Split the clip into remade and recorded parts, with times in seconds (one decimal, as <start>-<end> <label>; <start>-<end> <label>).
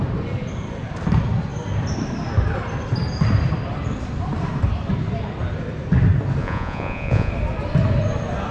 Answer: 0.0-6.4 recorded; 6.4-7.3 remade; 7.3-8.5 recorded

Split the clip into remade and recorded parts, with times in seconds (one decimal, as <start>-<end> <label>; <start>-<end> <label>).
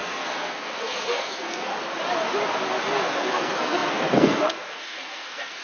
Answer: 0.0-1.7 remade; 1.7-2.8 recorded; 2.8-5.6 remade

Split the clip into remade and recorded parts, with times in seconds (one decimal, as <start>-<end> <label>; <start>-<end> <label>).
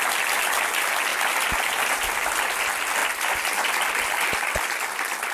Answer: 0.0-5.3 recorded